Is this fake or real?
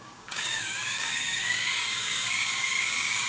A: fake